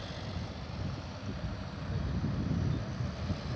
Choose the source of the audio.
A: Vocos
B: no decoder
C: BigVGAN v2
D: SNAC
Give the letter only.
B